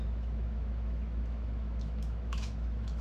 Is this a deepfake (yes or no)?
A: yes